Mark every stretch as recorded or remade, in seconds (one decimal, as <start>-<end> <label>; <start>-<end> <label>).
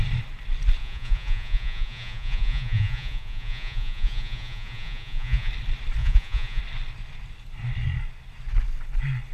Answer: 0.0-0.8 recorded; 0.8-5.5 remade; 5.5-6.0 recorded; 6.0-6.6 remade; 6.6-9.3 recorded